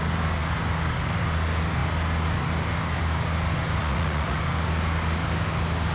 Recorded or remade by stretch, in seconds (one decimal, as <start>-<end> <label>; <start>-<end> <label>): 0.0-3.8 recorded; 3.8-4.4 remade; 4.4-5.9 recorded